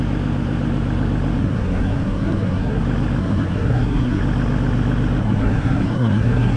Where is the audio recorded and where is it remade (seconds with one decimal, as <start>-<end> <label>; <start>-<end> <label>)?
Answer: 0.0-1.4 recorded; 1.4-2.8 remade; 2.8-3.2 recorded; 3.2-4.2 remade; 4.2-5.2 recorded; 5.2-6.6 remade

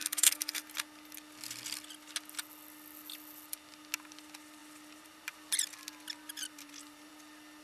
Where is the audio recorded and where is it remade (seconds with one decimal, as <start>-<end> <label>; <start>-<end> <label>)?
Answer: 0.0-0.6 remade; 0.6-7.6 recorded